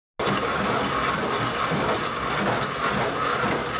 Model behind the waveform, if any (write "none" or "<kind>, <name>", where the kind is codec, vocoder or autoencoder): none